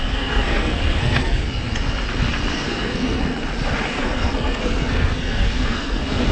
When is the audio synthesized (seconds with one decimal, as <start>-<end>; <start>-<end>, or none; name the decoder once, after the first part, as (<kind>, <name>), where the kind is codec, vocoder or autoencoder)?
0.0-1.4 (codec, SNAC); 2.5-3.2; 3.9-6.3